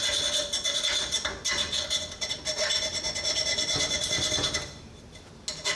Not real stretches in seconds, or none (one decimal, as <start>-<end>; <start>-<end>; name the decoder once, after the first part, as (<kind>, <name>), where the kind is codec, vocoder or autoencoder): none